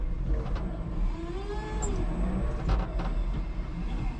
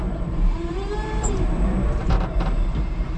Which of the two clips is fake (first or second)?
second